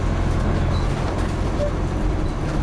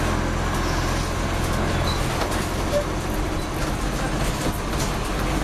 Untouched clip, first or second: second